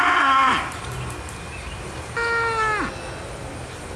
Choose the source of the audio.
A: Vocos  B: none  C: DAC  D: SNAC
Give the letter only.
B